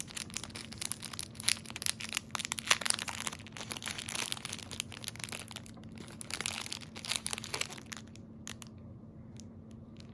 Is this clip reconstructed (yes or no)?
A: no